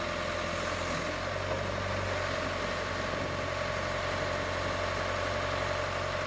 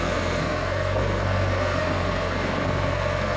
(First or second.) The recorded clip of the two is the first